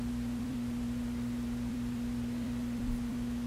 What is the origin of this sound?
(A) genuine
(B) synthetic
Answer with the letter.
B